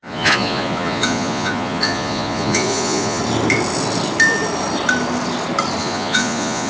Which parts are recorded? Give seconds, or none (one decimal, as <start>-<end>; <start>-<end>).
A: 3.2-5.8